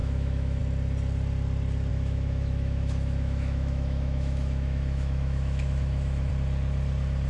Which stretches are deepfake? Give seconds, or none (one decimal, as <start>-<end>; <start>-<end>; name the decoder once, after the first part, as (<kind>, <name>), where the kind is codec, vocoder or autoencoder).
0.0-0.6 (autoencoder, DAC-VAE); 1.9-6.3